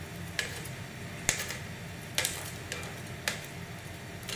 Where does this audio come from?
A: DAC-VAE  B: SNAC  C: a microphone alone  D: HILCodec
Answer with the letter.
C